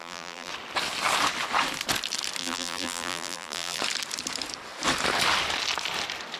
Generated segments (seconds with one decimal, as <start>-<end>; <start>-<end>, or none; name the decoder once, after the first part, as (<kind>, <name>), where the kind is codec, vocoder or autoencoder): 0.0-0.5 (vocoder, BigVGAN v2); 2.4-3.8